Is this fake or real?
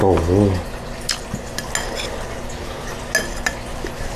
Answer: real